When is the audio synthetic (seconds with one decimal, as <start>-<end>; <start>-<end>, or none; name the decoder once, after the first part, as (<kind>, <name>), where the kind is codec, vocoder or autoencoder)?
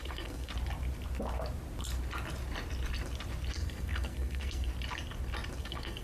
0.0-0.5 (codec, SNAC); 3.5-4.7; 5.6-6.0